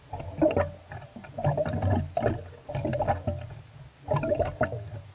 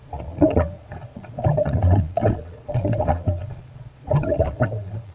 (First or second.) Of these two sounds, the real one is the first